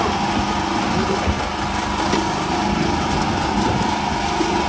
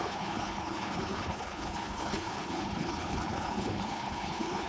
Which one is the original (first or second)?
first